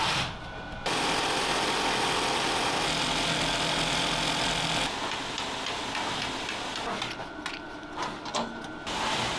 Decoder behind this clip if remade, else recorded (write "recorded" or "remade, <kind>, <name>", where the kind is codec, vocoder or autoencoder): recorded